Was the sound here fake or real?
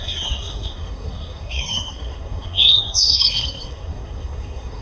fake